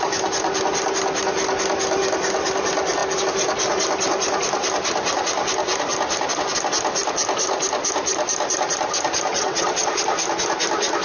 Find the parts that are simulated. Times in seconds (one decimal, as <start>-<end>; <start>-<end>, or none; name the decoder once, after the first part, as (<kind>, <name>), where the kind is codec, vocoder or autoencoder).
9.3-9.9 (vocoder, WaveNeXt)